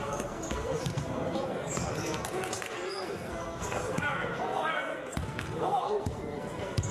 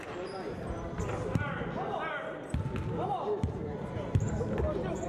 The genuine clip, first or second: second